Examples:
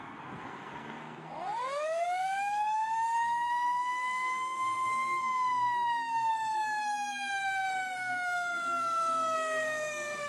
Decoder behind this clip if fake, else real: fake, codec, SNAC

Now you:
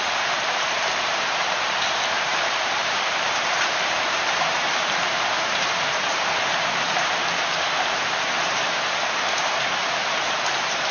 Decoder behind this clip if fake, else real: fake, vocoder, BigVGAN v2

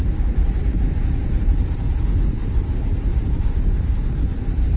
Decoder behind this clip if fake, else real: real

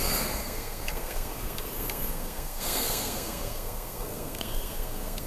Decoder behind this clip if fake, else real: fake, codec, SNAC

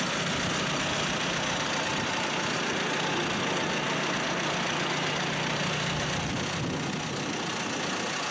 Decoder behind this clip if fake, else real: real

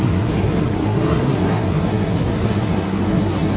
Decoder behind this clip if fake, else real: fake, codec, SNAC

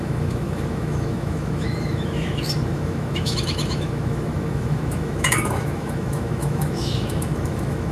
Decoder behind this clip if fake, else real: fake, autoencoder, DAC-VAE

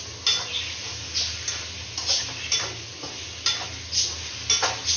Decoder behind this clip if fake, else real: real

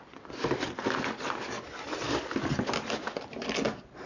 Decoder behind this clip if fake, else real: real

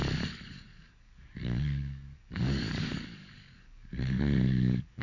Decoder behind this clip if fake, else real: fake, codec, DAC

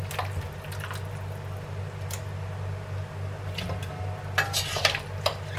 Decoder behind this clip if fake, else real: real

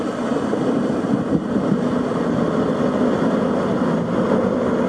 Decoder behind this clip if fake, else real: real